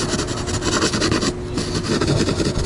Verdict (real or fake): real